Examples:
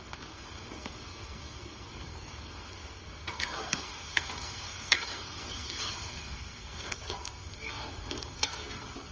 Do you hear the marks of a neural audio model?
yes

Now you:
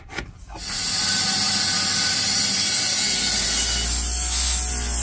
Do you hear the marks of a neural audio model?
no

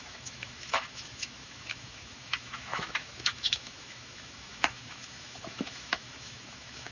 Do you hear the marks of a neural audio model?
yes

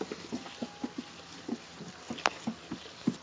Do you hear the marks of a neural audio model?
no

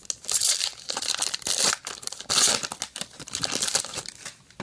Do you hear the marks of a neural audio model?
no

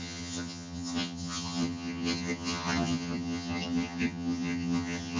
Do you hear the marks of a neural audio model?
yes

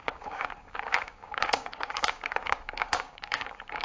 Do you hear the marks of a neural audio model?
yes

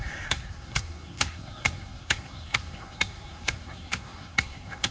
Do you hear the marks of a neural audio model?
yes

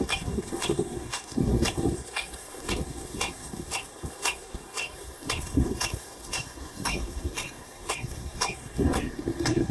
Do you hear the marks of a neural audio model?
yes